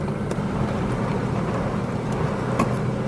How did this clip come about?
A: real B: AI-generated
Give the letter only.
A